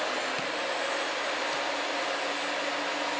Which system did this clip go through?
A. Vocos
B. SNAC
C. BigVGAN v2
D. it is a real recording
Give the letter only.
D